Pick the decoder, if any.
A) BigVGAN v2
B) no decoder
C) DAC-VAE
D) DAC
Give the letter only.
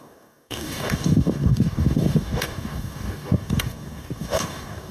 D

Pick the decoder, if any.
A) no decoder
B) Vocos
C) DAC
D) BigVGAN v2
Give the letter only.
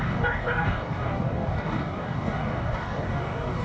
C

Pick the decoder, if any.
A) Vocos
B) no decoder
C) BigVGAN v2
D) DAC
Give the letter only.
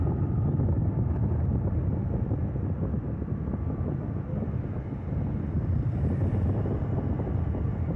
B